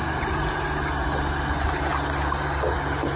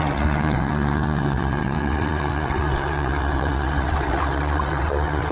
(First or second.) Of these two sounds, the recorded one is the first